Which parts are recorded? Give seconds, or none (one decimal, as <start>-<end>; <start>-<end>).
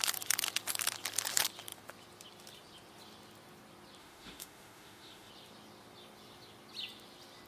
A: 0.0-4.0; 5.3-7.5